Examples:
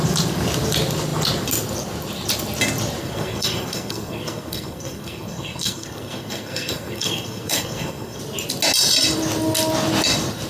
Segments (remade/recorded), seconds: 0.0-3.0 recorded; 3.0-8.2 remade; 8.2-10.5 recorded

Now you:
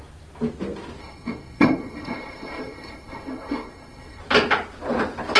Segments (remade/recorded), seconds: 0.0-1.0 recorded; 1.0-4.2 remade; 4.2-5.4 recorded

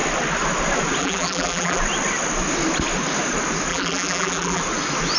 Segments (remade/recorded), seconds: 0.0-1.0 recorded; 1.0-1.8 remade; 1.8-3.7 recorded; 3.7-4.6 remade; 4.6-5.2 recorded

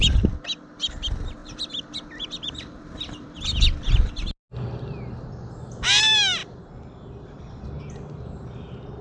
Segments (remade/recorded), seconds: 0.0-1.4 recorded; 1.4-4.1 remade; 4.1-6.4 recorded; 6.4-7.6 remade; 7.6-9.0 recorded

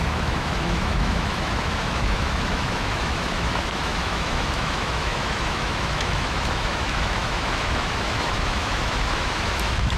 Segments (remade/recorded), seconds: 0.0-10.0 remade